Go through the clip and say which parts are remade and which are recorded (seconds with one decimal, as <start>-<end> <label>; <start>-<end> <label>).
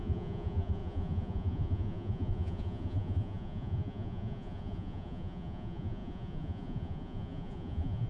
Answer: 0.0-8.1 remade